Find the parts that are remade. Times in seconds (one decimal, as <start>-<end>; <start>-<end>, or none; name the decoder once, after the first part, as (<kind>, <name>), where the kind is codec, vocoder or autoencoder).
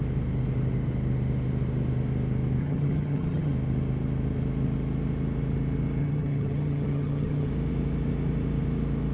2.6-3.5 (vocoder, HiFi-GAN); 6.0-7.5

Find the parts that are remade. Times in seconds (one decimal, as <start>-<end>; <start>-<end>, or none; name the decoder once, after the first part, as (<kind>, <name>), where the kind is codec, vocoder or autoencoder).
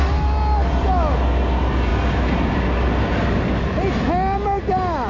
none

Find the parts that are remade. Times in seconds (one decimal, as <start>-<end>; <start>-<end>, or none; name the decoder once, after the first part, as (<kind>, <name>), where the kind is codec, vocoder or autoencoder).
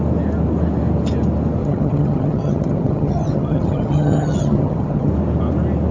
1.6-5.1 (vocoder, HiFi-GAN)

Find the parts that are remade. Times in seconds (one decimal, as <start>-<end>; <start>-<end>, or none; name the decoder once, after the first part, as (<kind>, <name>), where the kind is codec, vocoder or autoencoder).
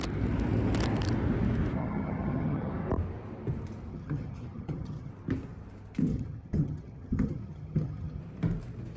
1.8-2.7 (vocoder, HiFi-GAN); 3.9-5.1; 6.1-8.2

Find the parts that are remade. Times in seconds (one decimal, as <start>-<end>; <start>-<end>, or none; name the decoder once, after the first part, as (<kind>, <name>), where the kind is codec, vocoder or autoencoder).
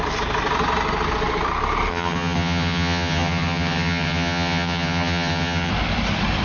1.9-5.7 (vocoder, HiFi-GAN)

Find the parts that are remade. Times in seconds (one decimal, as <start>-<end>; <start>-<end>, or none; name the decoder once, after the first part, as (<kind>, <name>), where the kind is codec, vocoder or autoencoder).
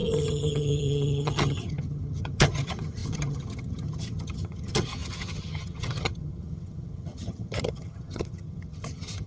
0.0-9.3 (vocoder, HiFi-GAN)